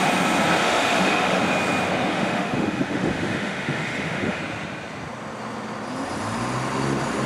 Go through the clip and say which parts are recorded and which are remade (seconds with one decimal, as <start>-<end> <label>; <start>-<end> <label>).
0.0-0.6 recorded; 0.6-1.4 remade; 1.4-2.1 recorded; 2.1-4.4 remade; 4.4-7.3 recorded